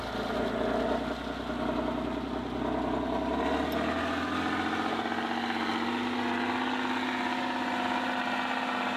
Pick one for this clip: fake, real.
real